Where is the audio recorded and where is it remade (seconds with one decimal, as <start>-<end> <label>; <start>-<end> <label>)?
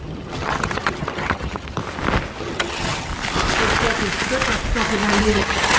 0.0-1.8 remade; 1.8-2.4 recorded; 2.4-3.1 remade; 3.1-5.2 recorded; 5.2-5.8 remade